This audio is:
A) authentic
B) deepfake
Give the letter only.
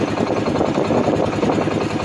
A